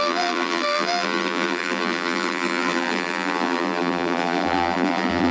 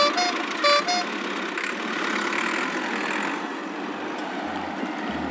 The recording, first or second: second